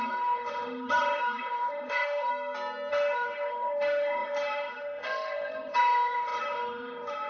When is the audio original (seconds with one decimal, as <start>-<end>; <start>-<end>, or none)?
2.3-2.9